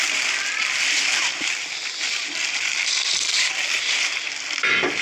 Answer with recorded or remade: remade